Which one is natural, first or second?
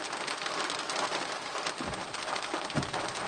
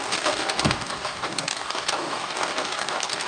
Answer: first